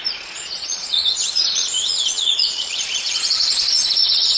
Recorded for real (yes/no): no